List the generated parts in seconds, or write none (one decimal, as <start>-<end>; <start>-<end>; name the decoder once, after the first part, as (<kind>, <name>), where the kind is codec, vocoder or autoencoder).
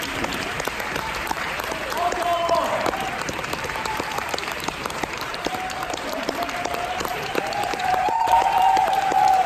0.0-9.5 (vocoder, BigVGAN v2)